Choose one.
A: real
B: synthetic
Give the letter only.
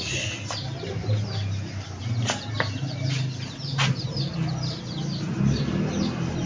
A